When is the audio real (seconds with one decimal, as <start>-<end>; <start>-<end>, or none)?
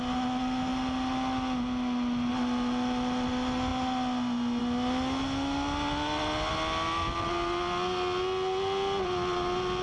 0.0-9.8